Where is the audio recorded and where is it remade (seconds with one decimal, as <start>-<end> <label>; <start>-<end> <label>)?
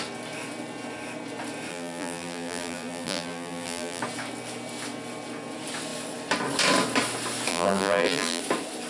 0.0-1.7 recorded; 1.7-4.0 remade; 4.0-7.5 recorded; 7.5-8.4 remade; 8.4-8.9 recorded